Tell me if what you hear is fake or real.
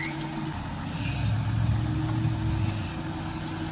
real